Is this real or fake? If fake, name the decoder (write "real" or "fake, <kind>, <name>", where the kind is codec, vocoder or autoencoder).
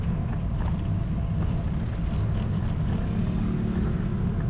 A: real